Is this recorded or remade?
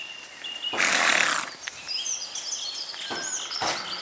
recorded